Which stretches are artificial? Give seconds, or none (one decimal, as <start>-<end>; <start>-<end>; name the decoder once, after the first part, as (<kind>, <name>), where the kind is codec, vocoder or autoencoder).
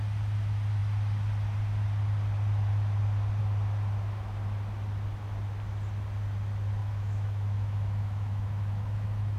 6.8-9.4 (autoencoder, DAC-VAE)